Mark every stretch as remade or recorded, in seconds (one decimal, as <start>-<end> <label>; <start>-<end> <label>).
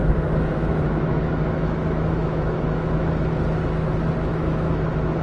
0.0-3.1 remade; 3.1-4.3 recorded; 4.3-4.8 remade; 4.8-5.2 recorded